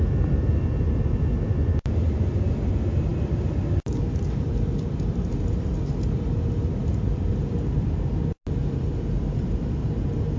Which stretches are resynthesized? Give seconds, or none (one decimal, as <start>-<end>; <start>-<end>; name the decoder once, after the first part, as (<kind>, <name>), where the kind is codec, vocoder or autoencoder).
none